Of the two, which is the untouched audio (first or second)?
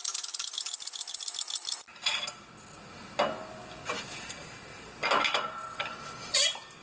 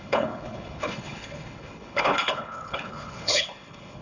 first